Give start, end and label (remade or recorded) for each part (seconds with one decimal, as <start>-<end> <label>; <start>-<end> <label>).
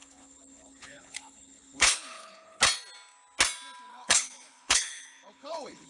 0.0-2.6 remade; 2.6-3.9 recorded; 3.9-5.9 remade